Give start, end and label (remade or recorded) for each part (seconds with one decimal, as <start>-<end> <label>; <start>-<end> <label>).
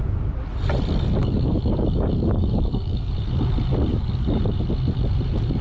0.0-1.2 recorded; 1.2-3.1 remade; 3.1-3.9 recorded; 3.9-4.4 remade; 4.4-5.6 recorded